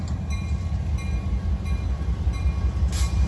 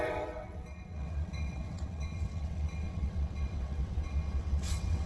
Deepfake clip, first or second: second